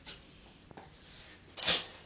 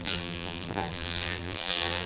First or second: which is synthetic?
second